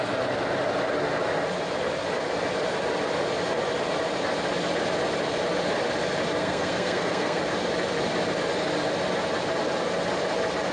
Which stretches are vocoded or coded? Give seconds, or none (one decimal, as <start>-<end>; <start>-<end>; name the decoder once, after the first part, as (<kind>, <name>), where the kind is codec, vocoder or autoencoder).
6.4-7.4 (codec, SNAC)